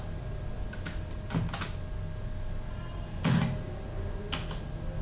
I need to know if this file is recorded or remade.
recorded